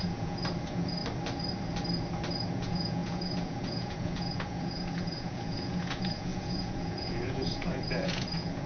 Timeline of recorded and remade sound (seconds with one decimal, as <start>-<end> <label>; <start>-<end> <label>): 0.0-1.0 remade; 1.0-2.5 recorded; 2.5-8.7 remade